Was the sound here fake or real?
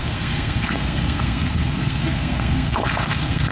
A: fake